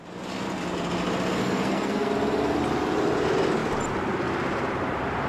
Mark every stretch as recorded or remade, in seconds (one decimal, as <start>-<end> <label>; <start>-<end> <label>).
0.0-1.4 recorded; 1.4-2.1 remade; 2.1-5.3 recorded